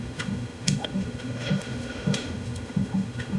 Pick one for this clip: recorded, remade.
remade